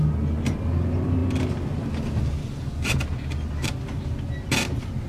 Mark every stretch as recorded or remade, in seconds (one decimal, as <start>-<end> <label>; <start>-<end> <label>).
0.0-5.1 recorded